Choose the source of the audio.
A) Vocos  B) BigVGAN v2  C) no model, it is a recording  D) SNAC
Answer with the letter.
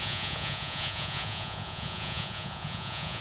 A